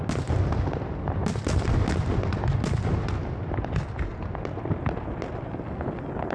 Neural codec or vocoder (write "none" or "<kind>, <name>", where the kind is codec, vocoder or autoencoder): none